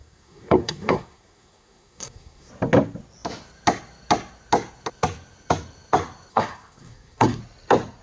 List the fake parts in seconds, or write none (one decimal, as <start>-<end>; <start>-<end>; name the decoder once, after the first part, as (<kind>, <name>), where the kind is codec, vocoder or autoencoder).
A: 0.0-2.5 (codec, SNAC); 6.3-7.4